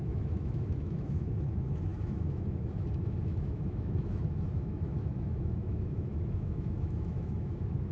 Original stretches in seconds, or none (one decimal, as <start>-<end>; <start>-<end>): none